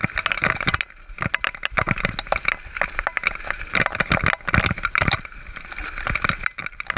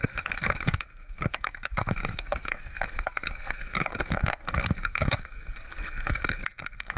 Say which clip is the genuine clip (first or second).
first